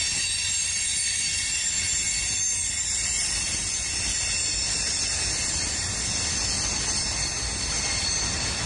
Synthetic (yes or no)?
no